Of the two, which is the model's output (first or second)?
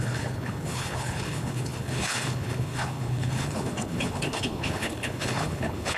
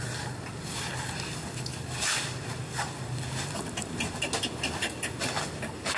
first